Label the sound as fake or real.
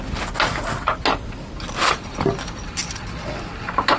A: real